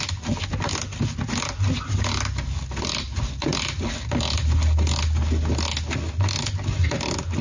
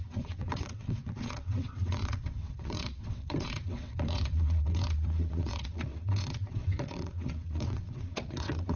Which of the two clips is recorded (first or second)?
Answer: first